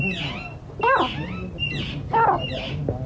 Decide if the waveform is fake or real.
real